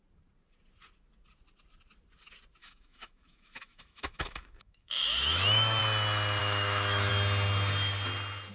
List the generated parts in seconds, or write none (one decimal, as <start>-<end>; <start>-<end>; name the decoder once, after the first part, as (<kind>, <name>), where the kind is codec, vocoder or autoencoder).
2.6-5.8 (autoencoder, DAC-VAE); 6.4-7.1